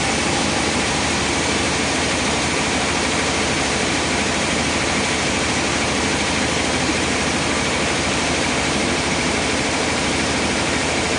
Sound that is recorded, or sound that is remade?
remade